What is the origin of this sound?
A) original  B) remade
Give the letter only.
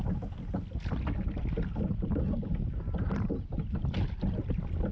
A